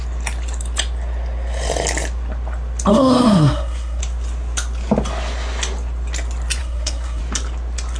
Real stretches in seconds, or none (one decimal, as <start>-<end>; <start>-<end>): 0.0-2.9; 4.0-6.6; 7.2-8.0